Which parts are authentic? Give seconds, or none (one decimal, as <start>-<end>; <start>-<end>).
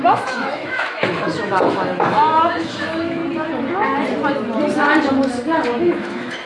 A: 3.2-5.8